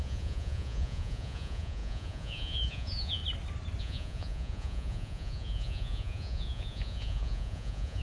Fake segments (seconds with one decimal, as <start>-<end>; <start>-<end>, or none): 0.0-3.2; 3.8-8.0